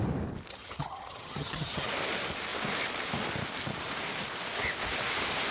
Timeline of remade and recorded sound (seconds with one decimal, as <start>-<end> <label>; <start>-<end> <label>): 0.0-0.5 recorded; 0.5-1.9 remade; 1.9-5.5 recorded